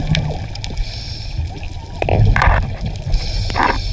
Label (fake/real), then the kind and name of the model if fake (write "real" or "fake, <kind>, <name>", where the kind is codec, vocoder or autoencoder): real